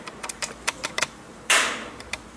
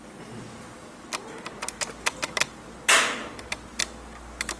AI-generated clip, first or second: first